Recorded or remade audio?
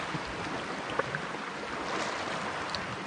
recorded